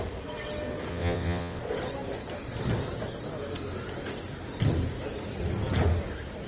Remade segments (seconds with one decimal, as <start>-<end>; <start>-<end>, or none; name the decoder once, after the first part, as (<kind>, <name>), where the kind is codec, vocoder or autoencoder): 0.9-1.6 (vocoder, WaveNeXt)